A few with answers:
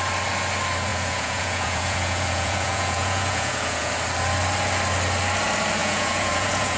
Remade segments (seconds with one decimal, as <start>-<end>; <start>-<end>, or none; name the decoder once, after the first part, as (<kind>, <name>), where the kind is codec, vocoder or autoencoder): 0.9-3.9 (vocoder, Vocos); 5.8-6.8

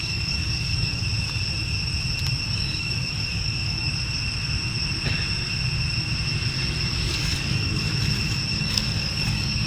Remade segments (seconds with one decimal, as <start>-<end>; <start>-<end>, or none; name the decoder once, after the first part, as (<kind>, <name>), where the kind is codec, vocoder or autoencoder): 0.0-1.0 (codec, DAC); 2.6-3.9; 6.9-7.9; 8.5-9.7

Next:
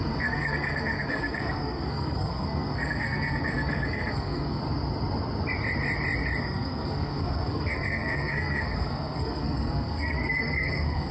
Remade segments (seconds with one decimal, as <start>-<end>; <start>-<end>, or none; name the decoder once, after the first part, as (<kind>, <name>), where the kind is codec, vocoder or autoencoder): 0.0-4.6 (codec, SNAC); 6.4-11.1

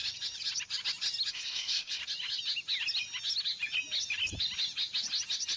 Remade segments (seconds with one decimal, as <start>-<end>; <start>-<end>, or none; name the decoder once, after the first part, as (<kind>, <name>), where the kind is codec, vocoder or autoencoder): 1.3-2.0 (codec, ZipCodec)

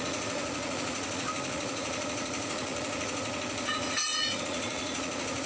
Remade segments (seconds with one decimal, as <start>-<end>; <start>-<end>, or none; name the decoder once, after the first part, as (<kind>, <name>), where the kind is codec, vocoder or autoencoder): 0.0-5.5 (vocoder, Vocos)

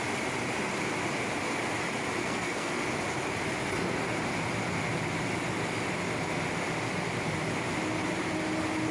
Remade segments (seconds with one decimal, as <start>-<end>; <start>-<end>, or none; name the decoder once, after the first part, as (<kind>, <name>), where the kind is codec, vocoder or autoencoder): 2.2-2.8 (codec, SNAC)

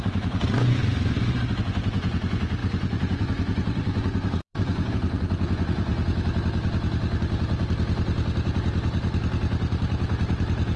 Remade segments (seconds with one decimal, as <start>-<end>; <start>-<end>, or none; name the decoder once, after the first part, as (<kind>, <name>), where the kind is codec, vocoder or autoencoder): 0.0-0.8 (vocoder, Vocos); 1.6-5.9